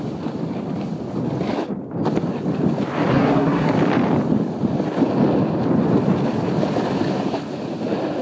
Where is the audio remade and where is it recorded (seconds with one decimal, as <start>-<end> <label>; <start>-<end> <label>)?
0.0-3.1 recorded; 3.1-3.7 remade; 3.7-8.2 recorded